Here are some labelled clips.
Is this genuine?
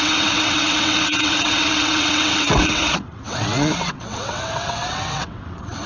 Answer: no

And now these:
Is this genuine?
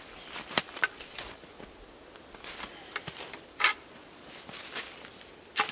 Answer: yes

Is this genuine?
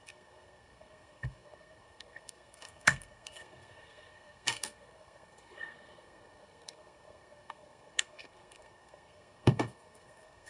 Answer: no